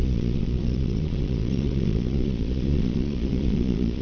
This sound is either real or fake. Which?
fake